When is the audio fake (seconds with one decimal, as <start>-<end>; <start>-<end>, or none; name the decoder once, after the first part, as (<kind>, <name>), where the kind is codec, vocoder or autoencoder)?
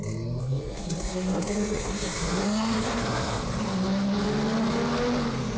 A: 0.4-3.4 (codec, SNAC)